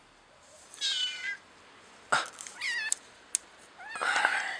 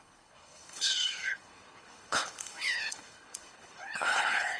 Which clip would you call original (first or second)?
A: first